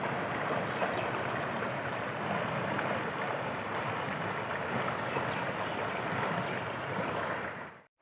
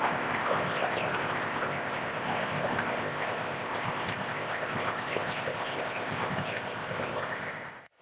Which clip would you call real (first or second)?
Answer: first